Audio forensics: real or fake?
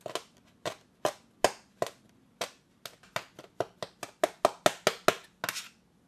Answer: real